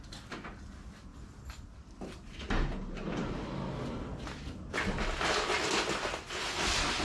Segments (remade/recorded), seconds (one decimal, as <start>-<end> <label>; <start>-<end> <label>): 0.0-7.0 recorded